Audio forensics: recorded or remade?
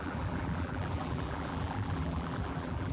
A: remade